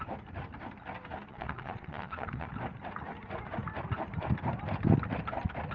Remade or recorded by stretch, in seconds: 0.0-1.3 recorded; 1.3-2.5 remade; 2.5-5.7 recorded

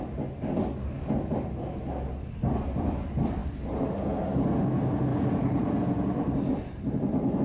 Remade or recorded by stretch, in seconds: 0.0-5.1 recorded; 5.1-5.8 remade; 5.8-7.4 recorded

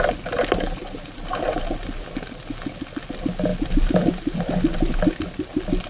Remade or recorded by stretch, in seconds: 0.0-5.9 recorded

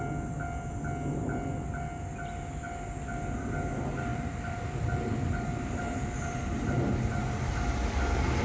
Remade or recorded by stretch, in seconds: 0.0-4.1 recorded; 4.1-7.8 remade; 7.8-8.4 recorded

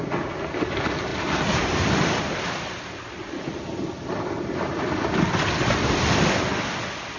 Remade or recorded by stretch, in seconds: 0.0-7.2 recorded